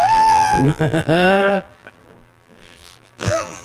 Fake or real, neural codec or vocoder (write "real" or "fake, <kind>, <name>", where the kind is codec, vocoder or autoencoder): fake, vocoder, BigVGAN v2